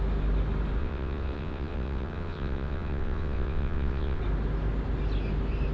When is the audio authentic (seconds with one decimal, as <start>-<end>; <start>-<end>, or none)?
0.0-0.8; 4.2-5.7